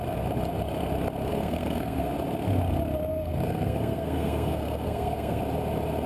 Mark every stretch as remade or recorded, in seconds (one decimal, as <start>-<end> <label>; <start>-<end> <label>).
0.0-1.3 recorded; 1.3-2.1 remade; 2.1-3.1 recorded; 3.1-5.4 remade; 5.4-6.1 recorded